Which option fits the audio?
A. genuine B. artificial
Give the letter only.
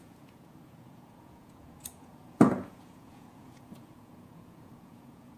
B